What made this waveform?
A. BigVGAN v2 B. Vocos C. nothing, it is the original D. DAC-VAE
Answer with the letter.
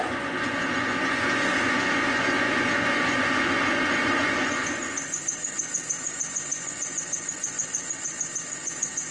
B